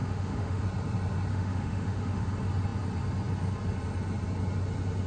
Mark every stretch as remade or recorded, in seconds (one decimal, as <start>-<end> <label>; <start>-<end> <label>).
0.0-0.6 remade; 0.6-1.3 recorded; 1.3-2.3 remade; 2.3-5.1 recorded